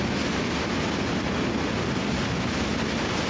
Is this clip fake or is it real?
real